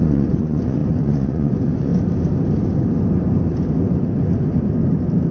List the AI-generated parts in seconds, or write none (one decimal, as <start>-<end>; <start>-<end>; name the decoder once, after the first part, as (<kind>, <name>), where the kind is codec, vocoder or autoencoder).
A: 0.0-1.9 (vocoder, Vocos)